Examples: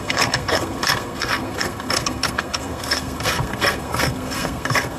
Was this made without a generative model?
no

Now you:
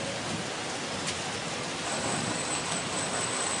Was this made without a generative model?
yes